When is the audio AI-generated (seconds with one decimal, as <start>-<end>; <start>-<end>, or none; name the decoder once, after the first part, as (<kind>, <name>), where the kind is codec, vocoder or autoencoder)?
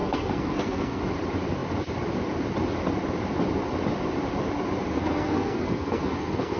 0.0-1.0 (codec, SNAC); 4.9-6.6